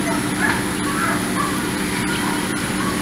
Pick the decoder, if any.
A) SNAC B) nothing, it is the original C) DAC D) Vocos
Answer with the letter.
B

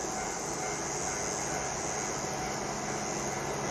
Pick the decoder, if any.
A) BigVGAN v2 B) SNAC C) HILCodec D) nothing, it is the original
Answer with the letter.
D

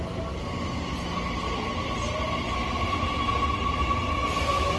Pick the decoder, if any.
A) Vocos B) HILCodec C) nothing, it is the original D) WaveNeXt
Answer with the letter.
C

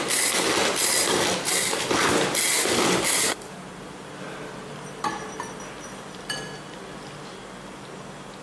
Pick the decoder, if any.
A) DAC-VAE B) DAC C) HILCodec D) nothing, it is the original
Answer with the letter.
D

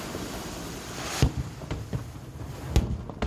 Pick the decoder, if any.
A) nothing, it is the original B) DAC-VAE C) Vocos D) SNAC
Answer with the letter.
A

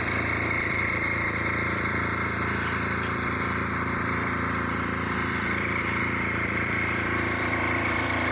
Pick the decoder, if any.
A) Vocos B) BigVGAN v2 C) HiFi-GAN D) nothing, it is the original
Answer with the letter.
B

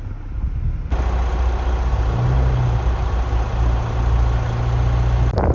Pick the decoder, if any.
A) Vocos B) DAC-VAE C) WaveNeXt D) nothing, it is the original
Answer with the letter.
D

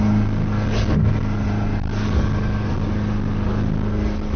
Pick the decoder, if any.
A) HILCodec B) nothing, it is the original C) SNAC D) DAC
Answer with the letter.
B